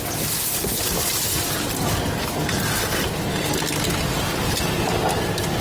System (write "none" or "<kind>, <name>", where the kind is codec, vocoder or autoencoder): none